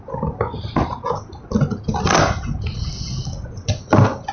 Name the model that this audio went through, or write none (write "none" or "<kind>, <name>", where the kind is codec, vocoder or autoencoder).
none